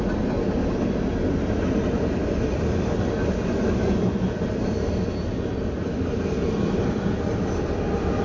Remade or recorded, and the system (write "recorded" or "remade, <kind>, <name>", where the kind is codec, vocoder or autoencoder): recorded